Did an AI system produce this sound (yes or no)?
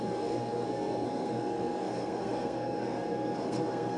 yes